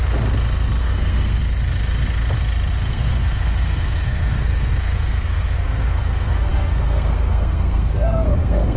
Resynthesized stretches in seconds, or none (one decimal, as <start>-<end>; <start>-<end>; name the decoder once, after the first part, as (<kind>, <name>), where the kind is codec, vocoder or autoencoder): 0.8-1.4 (codec, SNAC); 2.7-8.8